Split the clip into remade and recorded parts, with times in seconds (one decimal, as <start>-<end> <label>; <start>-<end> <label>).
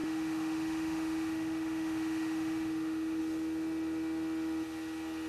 0.0-3.2 remade; 3.2-5.3 recorded